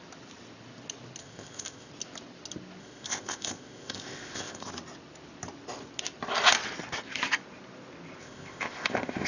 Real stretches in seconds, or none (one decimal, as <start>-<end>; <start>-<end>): 0.0-1.2; 1.9-2.8; 4.7-8.2